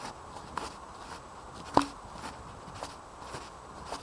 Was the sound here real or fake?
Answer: real